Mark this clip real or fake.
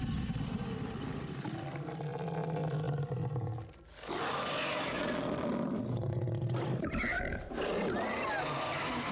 real